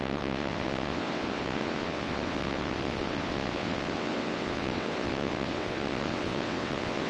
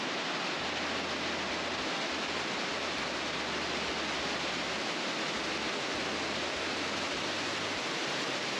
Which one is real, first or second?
second